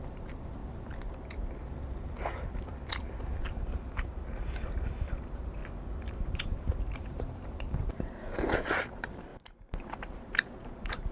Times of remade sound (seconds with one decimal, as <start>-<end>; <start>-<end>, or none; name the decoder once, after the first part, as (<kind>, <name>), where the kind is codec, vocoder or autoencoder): 0.0-0.6 (vocoder, BigVGAN v2); 4.1-5.6; 6.1-9.3; 9.9-11.1